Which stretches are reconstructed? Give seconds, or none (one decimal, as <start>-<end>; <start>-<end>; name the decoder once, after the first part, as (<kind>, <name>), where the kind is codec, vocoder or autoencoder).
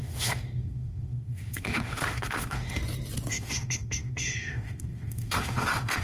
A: 0.0-2.8 (autoencoder, DAC-VAE); 3.3-6.0